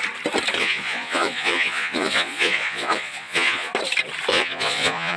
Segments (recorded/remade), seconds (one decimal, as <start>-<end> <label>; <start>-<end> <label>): 0.0-0.6 recorded; 0.6-3.7 remade; 3.7-4.3 recorded; 4.3-5.2 remade